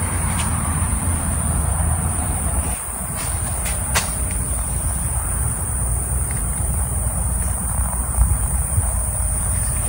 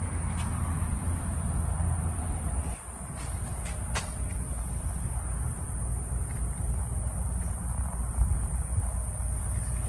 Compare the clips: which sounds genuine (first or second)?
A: second